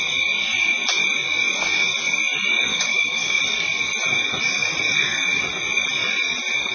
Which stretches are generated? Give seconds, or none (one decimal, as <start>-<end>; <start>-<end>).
2.7-3.4